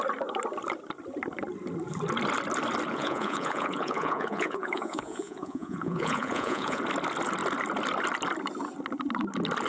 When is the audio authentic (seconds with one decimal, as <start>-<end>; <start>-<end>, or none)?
0.0-2.9; 6.8-9.7